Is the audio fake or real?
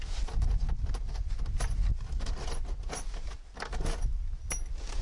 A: real